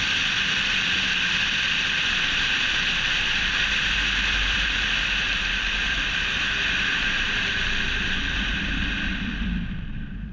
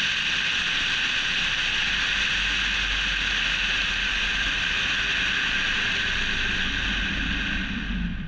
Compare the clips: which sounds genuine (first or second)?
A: second